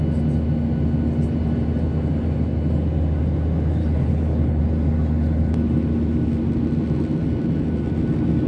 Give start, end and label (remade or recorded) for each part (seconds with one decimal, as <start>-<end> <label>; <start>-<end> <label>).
0.0-3.8 recorded; 3.8-4.6 remade; 4.6-8.5 recorded